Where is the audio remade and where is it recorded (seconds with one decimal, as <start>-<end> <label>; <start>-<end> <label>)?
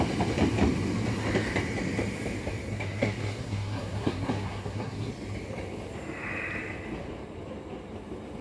0.0-2.7 recorded; 2.7-5.1 remade; 5.1-8.4 recorded